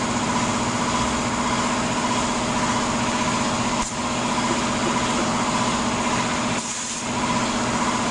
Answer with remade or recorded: recorded